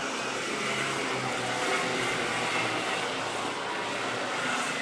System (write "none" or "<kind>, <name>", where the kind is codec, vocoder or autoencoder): none